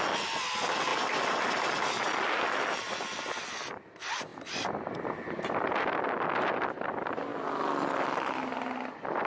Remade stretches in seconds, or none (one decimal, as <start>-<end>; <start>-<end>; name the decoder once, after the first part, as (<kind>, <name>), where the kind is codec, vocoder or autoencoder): none